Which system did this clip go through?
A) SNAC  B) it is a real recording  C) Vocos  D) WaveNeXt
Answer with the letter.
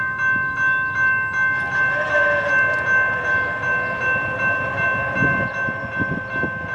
B